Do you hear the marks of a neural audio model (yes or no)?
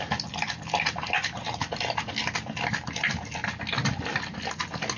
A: no